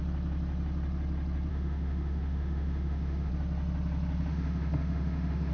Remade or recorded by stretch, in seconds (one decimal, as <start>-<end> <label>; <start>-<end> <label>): 0.0-1.5 recorded; 1.5-3.3 remade; 3.3-4.3 recorded; 4.3-5.5 remade